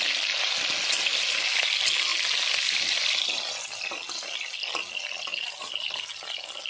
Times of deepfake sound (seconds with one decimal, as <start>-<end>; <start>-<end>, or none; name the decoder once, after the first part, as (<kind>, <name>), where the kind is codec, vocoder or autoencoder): none